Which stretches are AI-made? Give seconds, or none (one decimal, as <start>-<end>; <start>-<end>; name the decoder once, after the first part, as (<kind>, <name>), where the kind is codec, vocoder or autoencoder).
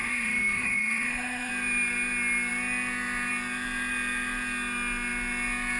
0.0-1.5 (autoencoder, DAC-VAE)